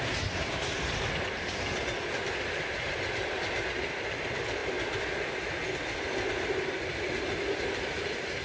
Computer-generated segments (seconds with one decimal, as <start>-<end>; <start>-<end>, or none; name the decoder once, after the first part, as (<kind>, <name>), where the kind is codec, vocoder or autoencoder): none